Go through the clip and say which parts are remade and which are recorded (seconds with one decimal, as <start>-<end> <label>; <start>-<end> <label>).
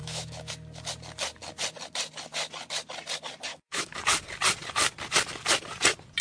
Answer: 0.0-0.5 remade; 0.5-3.5 recorded; 3.5-4.0 remade; 4.0-6.2 recorded